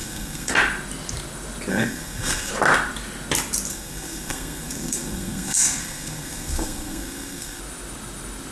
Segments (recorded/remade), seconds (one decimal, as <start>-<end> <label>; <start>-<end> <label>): 0.0-0.5 remade; 0.5-1.7 recorded; 1.7-2.5 remade; 2.5-3.7 recorded; 3.7-7.6 remade; 7.6-8.5 recorded